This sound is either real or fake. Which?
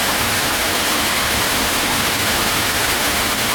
fake